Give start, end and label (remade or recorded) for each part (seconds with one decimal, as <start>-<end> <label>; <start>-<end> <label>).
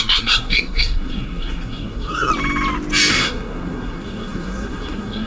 0.0-2.3 remade; 2.3-3.1 recorded; 3.1-5.3 remade